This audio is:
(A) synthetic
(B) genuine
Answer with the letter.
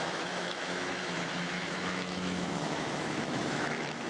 A